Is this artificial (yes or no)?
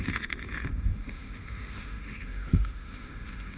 yes